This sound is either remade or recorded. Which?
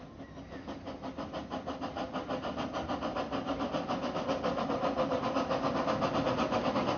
recorded